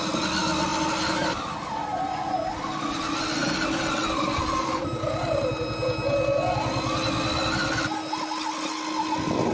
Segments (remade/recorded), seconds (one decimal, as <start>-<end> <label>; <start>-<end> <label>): 0.0-3.4 recorded; 3.4-5.5 remade; 5.5-9.5 recorded